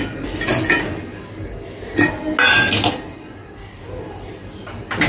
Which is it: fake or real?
real